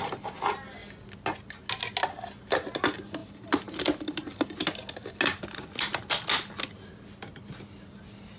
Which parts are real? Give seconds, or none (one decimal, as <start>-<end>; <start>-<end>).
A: 0.0-8.4